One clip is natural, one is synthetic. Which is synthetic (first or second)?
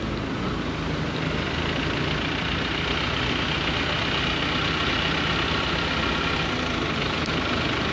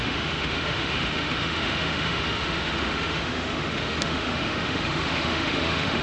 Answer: second